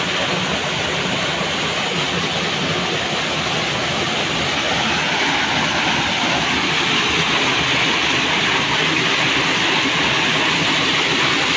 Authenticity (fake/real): real